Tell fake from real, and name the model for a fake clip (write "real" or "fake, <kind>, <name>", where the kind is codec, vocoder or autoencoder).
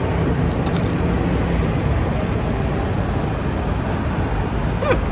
real